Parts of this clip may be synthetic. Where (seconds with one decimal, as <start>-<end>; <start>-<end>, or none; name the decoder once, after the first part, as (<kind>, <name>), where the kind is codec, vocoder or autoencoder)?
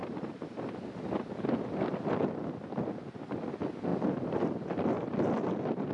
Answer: none